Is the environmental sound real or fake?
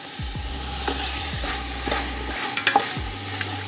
real